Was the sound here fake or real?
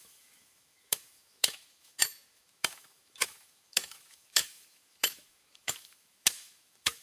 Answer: fake